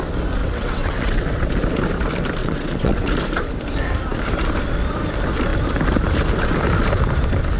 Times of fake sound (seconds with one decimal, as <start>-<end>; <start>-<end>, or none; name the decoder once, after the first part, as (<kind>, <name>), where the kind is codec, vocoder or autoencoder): 0.4-1.5 (vocoder, WaveNeXt); 2.4-3.2